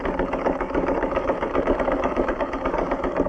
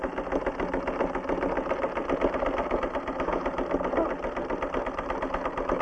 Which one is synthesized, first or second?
first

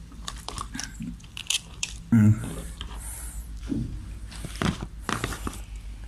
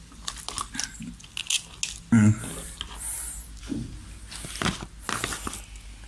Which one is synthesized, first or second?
first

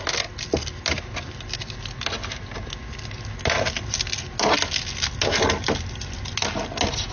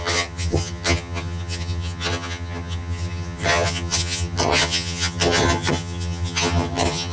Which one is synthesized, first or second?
second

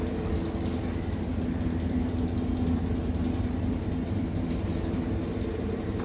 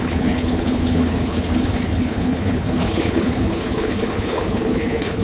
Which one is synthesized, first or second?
second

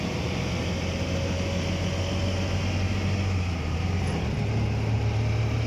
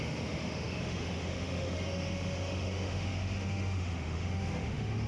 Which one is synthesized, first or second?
second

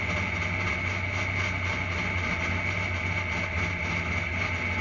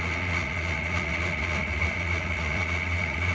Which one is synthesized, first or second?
second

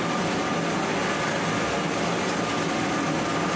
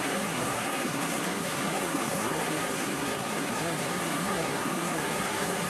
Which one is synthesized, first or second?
second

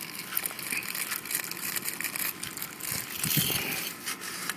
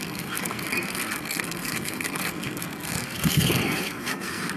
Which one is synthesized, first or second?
second